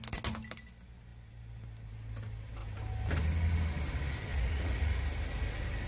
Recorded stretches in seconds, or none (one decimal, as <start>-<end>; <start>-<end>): 0.0-4.3; 5.0-5.9